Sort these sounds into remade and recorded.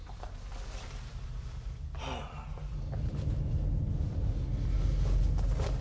recorded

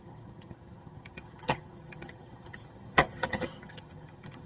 remade